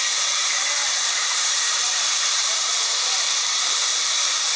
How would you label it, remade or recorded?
remade